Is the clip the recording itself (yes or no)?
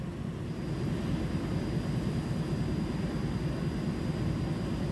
yes